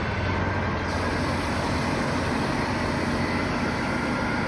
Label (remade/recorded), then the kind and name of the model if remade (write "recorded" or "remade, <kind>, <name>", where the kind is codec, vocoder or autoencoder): recorded